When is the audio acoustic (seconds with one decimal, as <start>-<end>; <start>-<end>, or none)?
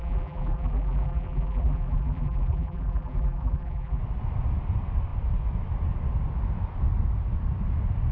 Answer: 4.0-8.1